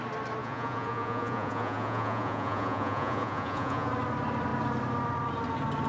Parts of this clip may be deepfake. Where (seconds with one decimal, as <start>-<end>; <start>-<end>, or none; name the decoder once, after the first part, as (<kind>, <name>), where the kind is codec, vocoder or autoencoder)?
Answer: 0.4-3.9 (vocoder, Vocos)